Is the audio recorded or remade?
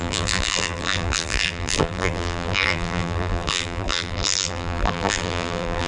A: remade